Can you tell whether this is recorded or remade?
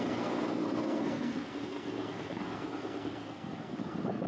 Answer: remade